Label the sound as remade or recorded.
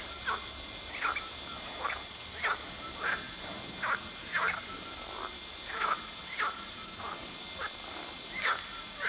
recorded